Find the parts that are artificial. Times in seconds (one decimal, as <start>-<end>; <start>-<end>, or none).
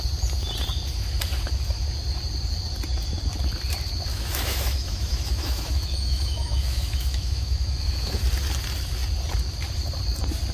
4.1-8.2